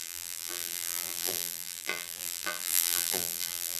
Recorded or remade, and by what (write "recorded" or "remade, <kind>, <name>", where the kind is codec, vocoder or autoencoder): remade, vocoder, BigVGAN v2